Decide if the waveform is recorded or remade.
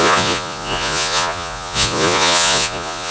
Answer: remade